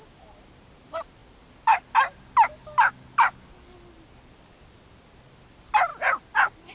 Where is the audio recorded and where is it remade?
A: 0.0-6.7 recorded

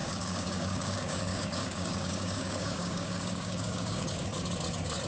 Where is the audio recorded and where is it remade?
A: 0.0-4.3 remade; 4.3-5.1 recorded

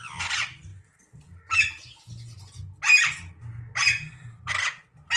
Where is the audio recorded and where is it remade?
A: 0.0-5.2 recorded

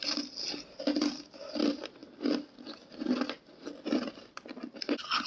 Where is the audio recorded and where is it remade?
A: 0.0-5.3 recorded

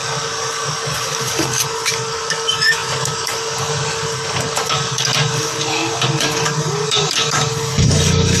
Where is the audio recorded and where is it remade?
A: 0.0-8.4 remade

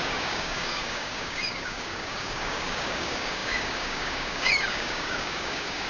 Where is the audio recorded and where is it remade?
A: 0.0-5.9 remade

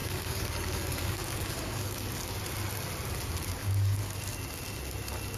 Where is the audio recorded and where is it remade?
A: 0.0-2.0 remade; 2.0-3.6 recorded; 3.6-4.2 remade; 4.2-5.4 recorded